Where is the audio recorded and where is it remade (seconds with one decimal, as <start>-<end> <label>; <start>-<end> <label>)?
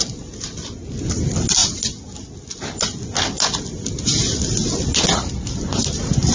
0.0-6.3 recorded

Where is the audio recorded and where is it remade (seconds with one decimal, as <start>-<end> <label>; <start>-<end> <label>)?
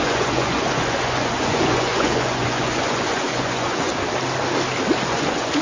0.0-3.9 remade; 3.9-5.1 recorded; 5.1-5.6 remade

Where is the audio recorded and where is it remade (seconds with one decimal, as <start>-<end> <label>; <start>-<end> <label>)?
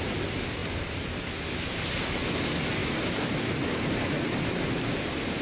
0.0-5.4 recorded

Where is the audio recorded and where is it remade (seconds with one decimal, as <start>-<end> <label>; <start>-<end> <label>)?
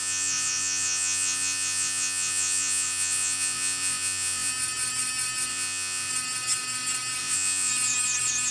0.0-4.5 remade; 4.5-5.5 recorded; 5.5-6.1 remade; 6.1-7.2 recorded; 7.2-7.7 remade; 7.7-8.5 recorded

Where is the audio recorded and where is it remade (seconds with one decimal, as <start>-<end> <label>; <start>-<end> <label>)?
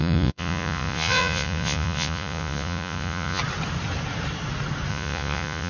0.0-3.4 remade; 3.4-4.9 recorded; 4.9-5.7 remade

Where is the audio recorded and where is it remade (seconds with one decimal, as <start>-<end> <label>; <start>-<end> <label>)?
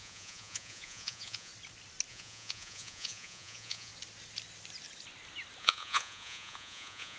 0.0-1.5 remade; 1.5-2.1 recorded; 2.1-3.9 remade; 3.9-5.6 recorded; 5.6-7.2 remade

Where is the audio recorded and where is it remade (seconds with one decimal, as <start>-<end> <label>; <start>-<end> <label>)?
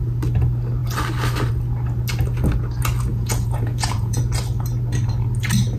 0.0-3.1 recorded; 3.1-4.2 remade; 4.2-5.8 recorded